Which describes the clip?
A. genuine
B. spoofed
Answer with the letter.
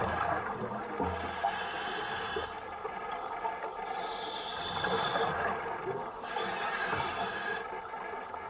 A